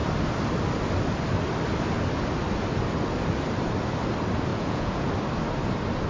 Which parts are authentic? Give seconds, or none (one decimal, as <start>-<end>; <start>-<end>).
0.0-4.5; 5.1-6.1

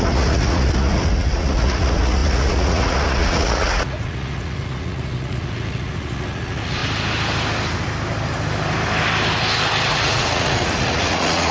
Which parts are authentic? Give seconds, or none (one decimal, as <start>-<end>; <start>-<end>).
6.8-9.9

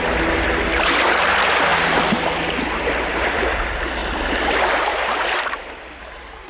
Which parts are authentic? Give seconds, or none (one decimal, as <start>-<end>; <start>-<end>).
4.0-5.8

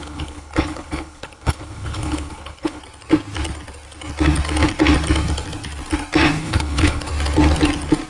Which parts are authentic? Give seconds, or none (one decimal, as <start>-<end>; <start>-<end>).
2.8-6.4; 7.1-8.1

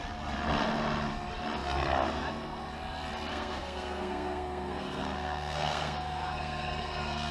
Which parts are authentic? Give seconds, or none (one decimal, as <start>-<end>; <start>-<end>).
0.0-3.3

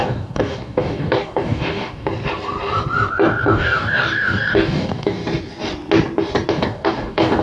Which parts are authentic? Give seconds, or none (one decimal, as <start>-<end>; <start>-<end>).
2.1-3.1; 5.2-6.5